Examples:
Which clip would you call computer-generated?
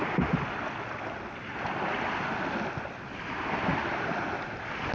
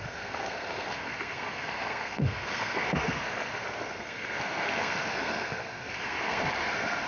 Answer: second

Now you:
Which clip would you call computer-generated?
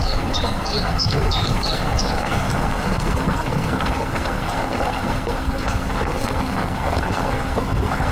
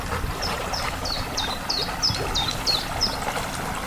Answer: first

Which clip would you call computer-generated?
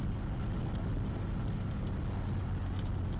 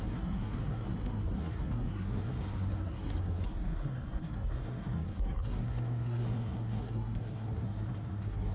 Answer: second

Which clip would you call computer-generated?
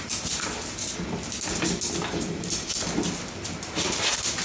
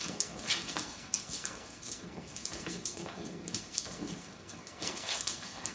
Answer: second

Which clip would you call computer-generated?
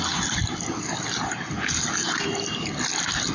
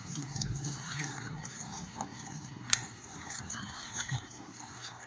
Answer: second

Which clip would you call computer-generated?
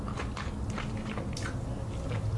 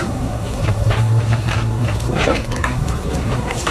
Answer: second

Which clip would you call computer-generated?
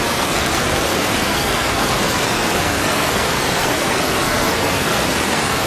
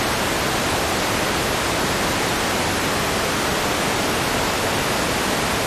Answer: first